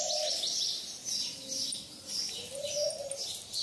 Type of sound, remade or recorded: recorded